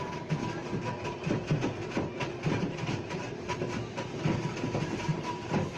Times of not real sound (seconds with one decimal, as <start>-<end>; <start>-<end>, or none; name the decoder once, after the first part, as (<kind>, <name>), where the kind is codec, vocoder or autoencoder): 0.0-5.8 (vocoder, BigVGAN v2)